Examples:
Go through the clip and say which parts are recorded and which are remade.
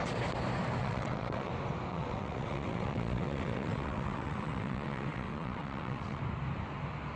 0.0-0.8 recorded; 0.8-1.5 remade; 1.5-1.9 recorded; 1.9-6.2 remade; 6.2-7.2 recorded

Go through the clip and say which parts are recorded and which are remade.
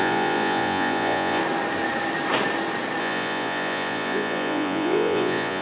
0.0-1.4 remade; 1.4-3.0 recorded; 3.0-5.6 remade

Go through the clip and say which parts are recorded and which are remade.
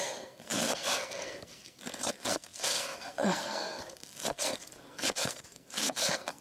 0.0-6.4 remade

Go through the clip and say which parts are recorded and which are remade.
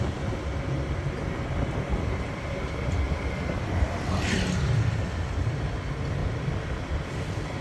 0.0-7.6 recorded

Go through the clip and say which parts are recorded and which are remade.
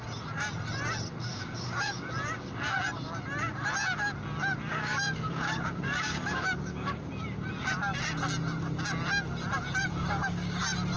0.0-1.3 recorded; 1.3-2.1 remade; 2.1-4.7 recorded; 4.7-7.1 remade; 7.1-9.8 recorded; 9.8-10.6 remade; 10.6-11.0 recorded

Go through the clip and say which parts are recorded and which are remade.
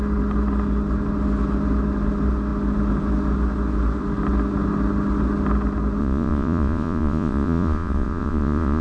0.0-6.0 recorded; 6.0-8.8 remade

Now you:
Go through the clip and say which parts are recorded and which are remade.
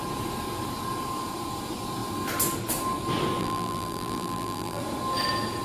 0.0-3.4 recorded; 3.4-4.8 remade; 4.8-5.6 recorded